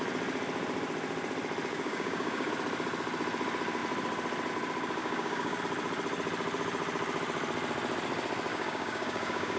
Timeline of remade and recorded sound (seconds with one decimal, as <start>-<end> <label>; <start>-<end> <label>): 0.0-1.7 recorded; 1.7-2.5 remade; 2.5-5.0 recorded; 5.0-5.6 remade; 5.6-8.5 recorded; 8.5-9.6 remade